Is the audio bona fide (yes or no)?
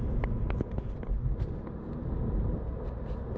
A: yes